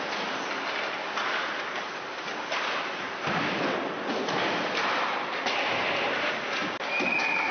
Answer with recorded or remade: recorded